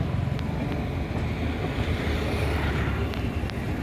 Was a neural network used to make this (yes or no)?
no